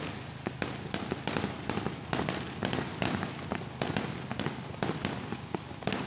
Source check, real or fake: real